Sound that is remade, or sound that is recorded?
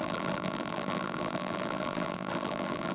remade